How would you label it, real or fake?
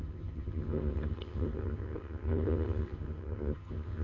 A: fake